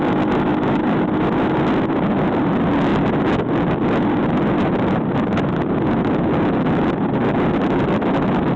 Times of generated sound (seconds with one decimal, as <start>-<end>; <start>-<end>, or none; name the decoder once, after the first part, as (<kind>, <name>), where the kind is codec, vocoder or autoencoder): none